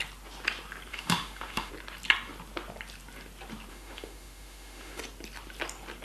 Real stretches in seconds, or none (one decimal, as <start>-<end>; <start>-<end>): 0.0-0.9; 1.7-3.7; 5.0-6.0